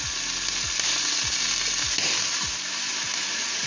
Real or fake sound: real